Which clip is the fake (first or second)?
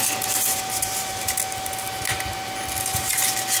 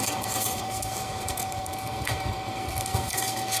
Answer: second